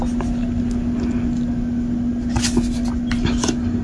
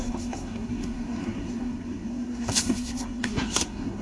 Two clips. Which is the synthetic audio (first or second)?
second